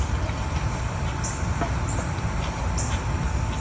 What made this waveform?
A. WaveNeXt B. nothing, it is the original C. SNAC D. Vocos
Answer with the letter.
B